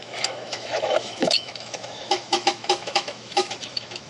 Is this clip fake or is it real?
fake